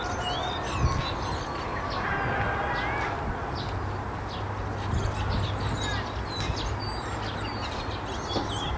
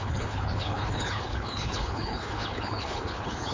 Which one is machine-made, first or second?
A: second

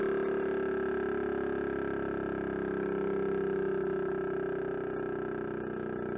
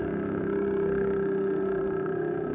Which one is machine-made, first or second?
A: second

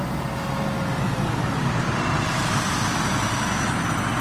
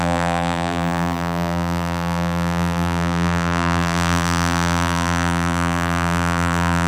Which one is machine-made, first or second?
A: second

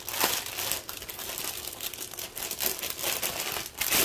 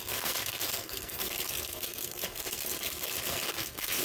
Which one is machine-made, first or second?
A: second